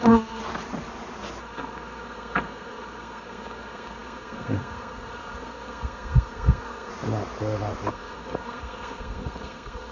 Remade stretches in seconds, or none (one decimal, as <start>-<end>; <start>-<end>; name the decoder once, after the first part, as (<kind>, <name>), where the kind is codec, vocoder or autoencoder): 0.0-0.4 (codec, SNAC); 1.4-6.9; 7.9-9.9